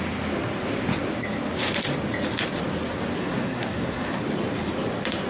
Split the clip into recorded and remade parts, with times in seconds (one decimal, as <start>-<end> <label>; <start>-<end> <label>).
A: 0.0-3.2 recorded; 3.2-4.2 remade; 4.2-5.3 recorded